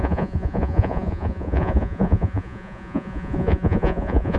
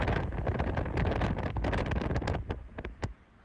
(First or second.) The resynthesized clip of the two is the first